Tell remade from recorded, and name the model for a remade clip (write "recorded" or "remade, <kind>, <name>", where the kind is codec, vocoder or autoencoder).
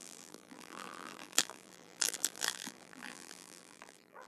remade, vocoder, BigVGAN v2